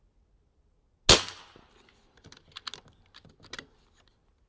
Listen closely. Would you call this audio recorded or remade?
recorded